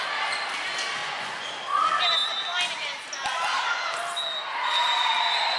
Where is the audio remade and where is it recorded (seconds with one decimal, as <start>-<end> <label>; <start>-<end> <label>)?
0.0-1.0 recorded; 1.0-1.5 remade; 1.5-5.6 recorded